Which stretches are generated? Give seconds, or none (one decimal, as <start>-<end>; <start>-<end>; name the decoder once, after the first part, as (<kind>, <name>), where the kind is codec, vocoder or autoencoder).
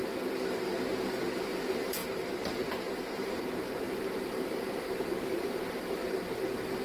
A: 2.0-6.1 (vocoder, BigVGAN v2)